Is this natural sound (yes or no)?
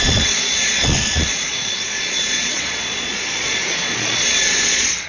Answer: no